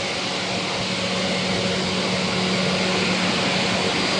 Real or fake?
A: real